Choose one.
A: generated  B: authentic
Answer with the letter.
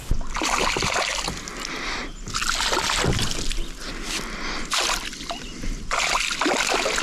B